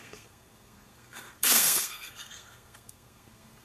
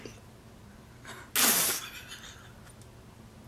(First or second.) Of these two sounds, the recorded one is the second